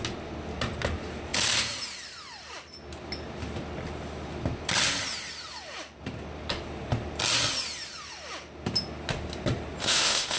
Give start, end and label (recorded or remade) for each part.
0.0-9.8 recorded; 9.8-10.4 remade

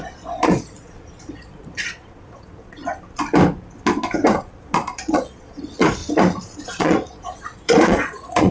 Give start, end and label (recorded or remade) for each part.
0.0-2.8 remade; 2.8-4.6 recorded; 4.6-6.0 remade; 6.0-6.7 recorded; 6.7-8.5 remade

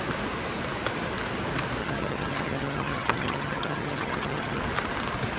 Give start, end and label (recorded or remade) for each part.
0.0-1.8 recorded; 1.8-4.6 remade; 4.6-5.4 recorded

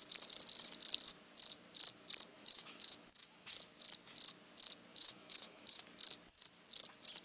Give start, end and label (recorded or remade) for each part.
0.0-2.3 recorded; 2.3-3.5 remade; 3.5-4.9 recorded; 4.9-5.8 remade; 5.8-7.2 recorded

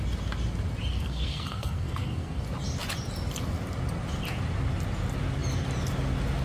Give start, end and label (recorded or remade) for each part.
0.0-0.9 recorded; 0.9-2.4 remade; 2.4-6.4 recorded

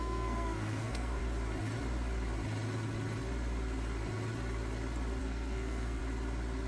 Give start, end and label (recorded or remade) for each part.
0.0-1.2 remade; 1.2-5.2 recorded; 5.2-6.0 remade; 6.0-6.7 recorded